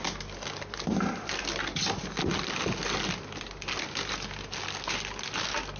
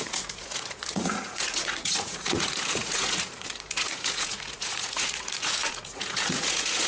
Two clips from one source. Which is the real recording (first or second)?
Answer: first